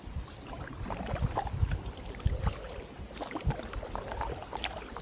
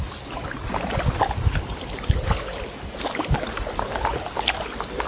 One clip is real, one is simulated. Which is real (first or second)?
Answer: second